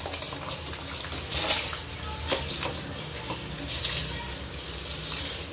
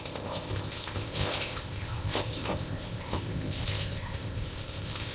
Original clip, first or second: first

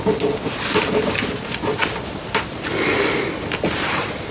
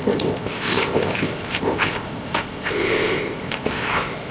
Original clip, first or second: first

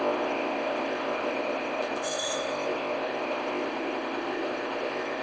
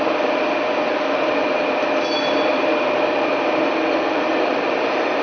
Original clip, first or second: second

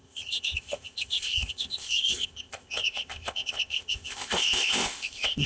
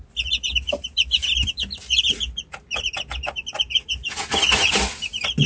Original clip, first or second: second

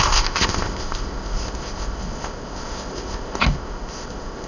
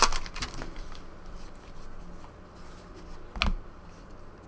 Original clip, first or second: second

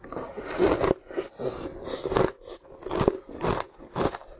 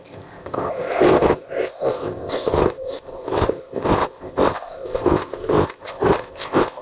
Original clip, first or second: first